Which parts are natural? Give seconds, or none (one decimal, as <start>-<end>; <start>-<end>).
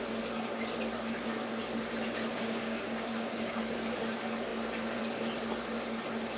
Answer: 0.0-2.3; 3.6-6.4